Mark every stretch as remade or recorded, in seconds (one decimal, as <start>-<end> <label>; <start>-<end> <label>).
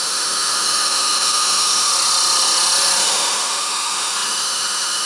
0.0-1.9 remade; 1.9-3.0 recorded; 3.0-5.1 remade